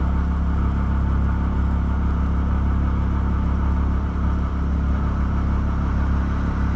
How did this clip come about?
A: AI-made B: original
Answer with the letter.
B